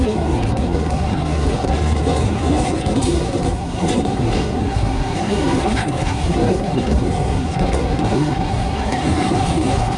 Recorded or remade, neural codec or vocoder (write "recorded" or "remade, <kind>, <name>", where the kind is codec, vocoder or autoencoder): remade, codec, SNAC